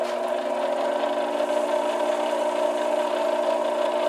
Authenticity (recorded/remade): recorded